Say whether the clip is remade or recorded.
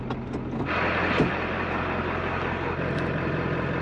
recorded